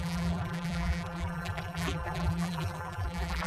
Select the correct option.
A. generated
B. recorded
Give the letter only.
A